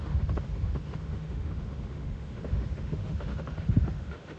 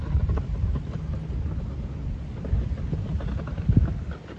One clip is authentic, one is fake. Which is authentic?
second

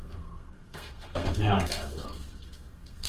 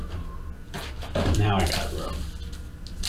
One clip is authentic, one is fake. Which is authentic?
second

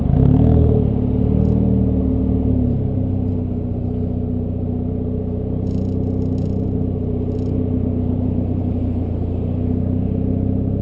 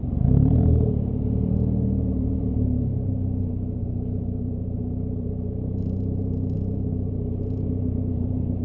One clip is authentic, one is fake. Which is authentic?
first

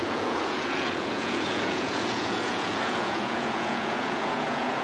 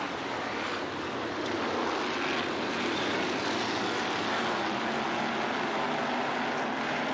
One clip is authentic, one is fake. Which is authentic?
second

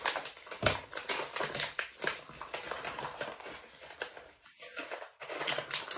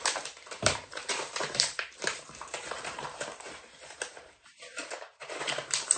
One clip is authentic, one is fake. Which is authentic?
first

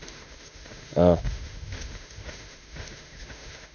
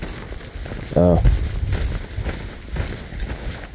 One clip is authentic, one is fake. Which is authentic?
second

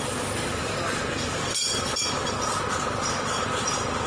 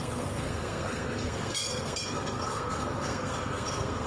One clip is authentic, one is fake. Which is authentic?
first